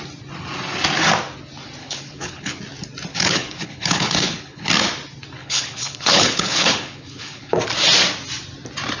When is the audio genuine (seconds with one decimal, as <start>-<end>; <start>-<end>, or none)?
0.0-1.8; 2.6-3.1; 4.7-5.4; 7.6-9.0